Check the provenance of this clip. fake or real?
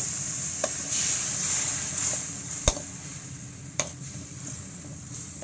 fake